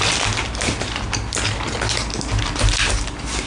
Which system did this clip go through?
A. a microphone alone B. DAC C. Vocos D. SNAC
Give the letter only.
A